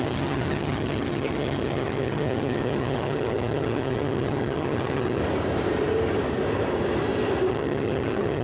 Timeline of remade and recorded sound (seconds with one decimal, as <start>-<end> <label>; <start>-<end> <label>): 0.0-5.2 remade; 5.2-7.5 recorded; 7.5-8.4 remade